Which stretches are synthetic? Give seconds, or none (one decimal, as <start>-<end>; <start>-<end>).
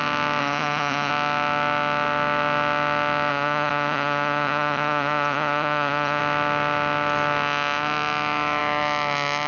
0.4-1.1; 3.3-6.2